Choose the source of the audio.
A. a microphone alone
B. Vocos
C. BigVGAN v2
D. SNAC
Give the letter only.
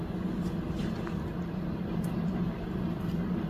A